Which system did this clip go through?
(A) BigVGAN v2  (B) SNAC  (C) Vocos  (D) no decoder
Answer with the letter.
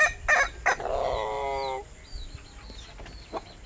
D